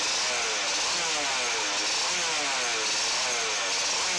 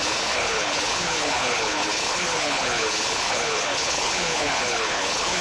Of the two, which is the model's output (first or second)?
second